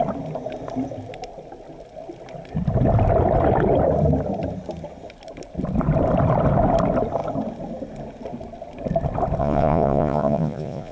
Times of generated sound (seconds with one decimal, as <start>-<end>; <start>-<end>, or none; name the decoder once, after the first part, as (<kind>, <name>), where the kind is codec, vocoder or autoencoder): 9.4-10.9 (vocoder, Vocos)